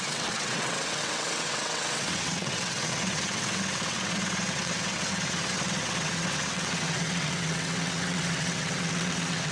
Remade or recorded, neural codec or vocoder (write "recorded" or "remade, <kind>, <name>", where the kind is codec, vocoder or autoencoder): remade, vocoder, WaveNeXt